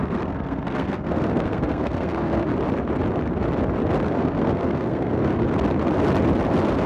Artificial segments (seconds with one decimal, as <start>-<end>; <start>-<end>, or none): 0.0-2.5; 4.1-5.3